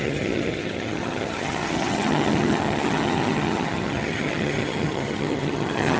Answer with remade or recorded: remade